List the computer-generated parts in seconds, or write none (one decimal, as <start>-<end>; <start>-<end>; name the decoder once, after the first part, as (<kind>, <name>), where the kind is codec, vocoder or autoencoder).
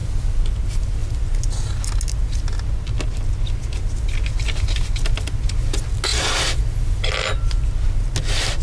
none